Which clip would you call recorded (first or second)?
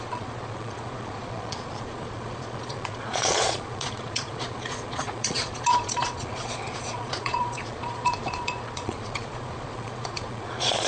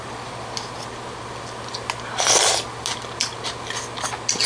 second